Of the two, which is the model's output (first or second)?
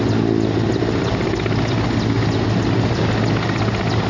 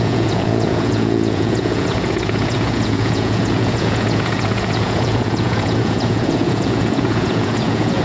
second